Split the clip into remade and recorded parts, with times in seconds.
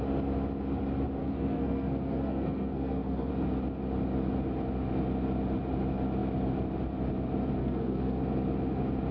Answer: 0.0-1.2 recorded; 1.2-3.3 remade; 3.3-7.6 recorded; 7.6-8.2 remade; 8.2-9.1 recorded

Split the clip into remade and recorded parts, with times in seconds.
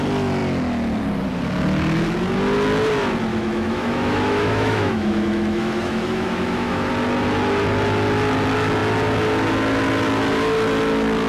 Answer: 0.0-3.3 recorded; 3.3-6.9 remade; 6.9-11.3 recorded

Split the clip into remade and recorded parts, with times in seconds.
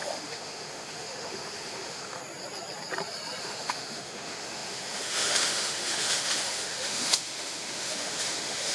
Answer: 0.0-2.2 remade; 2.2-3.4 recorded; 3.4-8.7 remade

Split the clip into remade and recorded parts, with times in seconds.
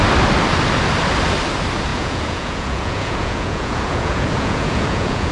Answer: 0.0-1.9 recorded; 1.9-5.3 remade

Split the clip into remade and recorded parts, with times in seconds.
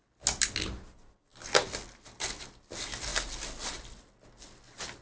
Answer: 0.0-5.0 recorded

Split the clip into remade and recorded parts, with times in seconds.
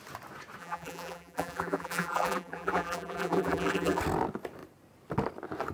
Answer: 0.0-0.6 recorded; 0.6-4.0 remade; 4.0-5.7 recorded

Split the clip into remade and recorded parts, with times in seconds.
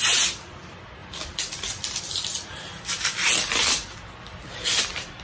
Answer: 0.0-1.0 recorded; 1.0-2.0 remade; 2.0-5.2 recorded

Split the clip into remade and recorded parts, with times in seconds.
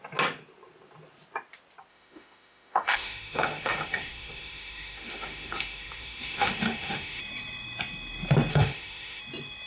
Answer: 0.0-1.9 recorded; 1.9-7.2 remade; 7.2-8.5 recorded; 8.5-9.2 remade; 9.2-9.7 recorded